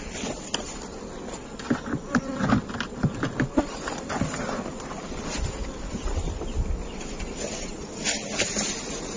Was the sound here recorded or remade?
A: remade